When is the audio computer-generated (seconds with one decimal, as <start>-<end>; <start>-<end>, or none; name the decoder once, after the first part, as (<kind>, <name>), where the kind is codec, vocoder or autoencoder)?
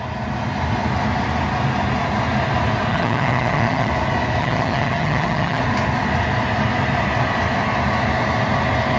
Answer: 2.9-3.9 (vocoder, HiFi-GAN); 4.4-5.6